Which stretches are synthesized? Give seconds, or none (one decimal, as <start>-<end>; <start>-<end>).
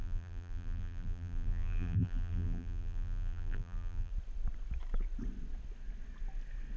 0.0-4.1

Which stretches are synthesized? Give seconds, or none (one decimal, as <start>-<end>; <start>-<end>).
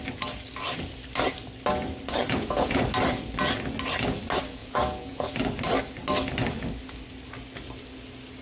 2.2-2.8; 4.6-5.3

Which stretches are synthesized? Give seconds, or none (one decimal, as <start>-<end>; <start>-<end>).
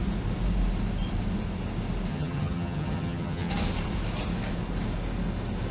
2.1-3.5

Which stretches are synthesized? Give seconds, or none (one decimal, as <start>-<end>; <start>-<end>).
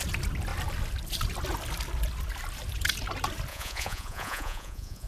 3.5-5.1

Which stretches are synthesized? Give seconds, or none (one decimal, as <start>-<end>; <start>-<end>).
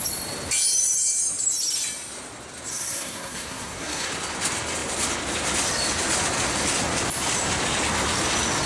2.7-4.1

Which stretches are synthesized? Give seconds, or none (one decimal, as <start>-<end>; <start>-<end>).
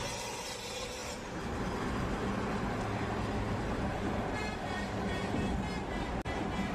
1.0-1.8; 3.9-6.1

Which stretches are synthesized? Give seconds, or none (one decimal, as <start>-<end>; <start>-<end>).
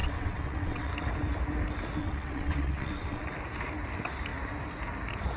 0.0-0.9; 2.0-3.2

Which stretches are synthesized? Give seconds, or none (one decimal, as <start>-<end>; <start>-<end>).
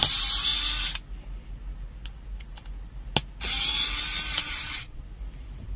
4.4-5.0